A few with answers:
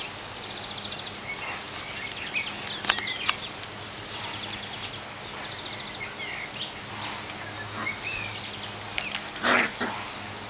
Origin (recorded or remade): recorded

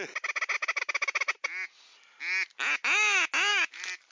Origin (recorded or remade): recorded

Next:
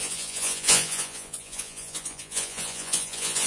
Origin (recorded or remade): remade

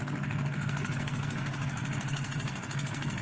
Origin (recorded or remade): remade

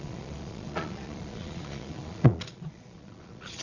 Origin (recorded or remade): remade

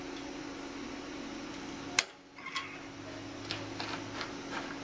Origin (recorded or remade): recorded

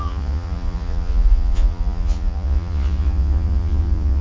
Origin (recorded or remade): remade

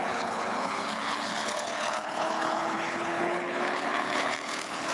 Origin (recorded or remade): remade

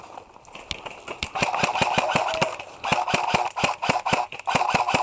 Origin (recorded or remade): recorded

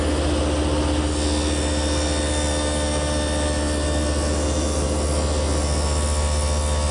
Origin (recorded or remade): recorded